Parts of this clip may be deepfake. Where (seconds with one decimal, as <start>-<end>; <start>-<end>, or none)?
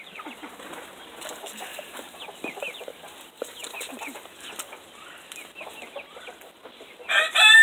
1.7-2.6